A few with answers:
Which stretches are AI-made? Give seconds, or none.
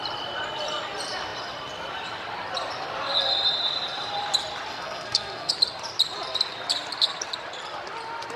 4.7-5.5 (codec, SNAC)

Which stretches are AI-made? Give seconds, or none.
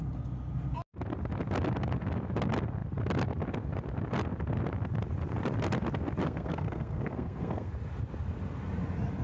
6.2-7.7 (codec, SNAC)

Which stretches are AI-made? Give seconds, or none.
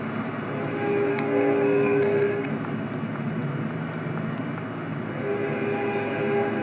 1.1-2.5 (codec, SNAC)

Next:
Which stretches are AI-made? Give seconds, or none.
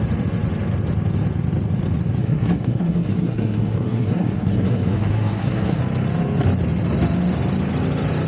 2.2-5.8 (codec, SNAC)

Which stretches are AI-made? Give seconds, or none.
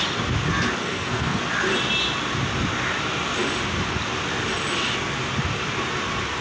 0.8-1.4 (codec, SNAC)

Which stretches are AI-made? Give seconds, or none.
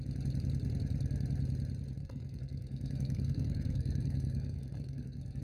2.0-5.4 (codec, SNAC)